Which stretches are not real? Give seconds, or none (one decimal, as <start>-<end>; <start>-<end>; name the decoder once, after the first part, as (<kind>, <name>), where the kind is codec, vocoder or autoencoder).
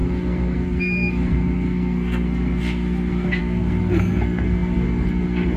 0.0-5.6 (codec, SNAC)